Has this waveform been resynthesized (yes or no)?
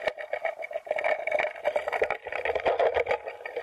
no